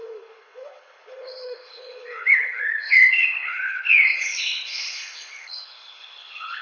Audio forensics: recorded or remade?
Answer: remade